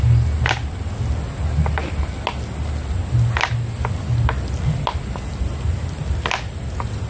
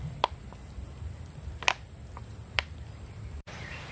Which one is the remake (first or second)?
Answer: second